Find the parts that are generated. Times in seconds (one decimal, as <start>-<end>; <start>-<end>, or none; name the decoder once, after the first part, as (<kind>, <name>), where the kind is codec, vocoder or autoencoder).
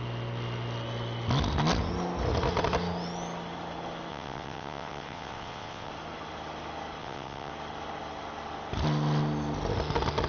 4.1-5.9 (vocoder, WaveNeXt); 7.0-7.5